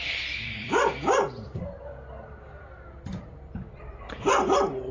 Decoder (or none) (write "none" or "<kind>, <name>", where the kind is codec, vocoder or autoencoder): vocoder, BigVGAN v2